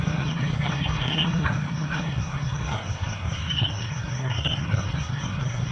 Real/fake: fake